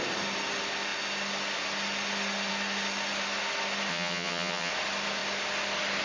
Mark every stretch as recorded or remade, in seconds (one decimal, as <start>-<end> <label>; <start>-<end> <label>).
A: 0.0-3.9 recorded; 3.9-4.7 remade; 4.7-6.0 recorded